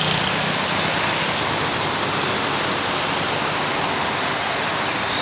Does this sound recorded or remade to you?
recorded